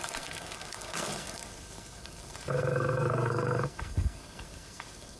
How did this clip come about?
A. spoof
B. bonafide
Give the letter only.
A